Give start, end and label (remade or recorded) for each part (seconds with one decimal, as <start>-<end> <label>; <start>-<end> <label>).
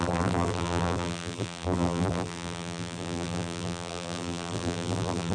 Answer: 0.0-5.3 remade